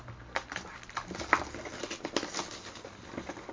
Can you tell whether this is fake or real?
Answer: real